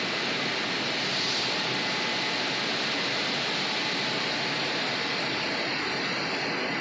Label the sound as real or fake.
real